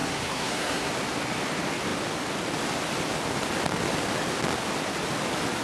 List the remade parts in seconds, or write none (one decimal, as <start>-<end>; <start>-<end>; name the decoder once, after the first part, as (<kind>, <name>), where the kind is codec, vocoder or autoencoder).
0.0-0.9 (codec, SNAC)